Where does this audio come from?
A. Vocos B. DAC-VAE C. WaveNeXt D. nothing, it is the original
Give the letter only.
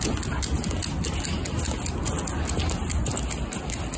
D